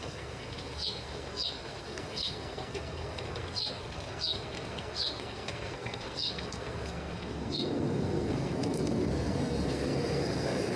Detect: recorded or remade remade